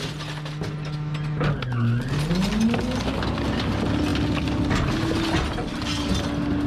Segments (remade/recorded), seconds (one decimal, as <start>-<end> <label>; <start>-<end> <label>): 0.0-6.7 recorded